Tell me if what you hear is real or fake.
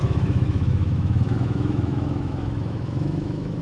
fake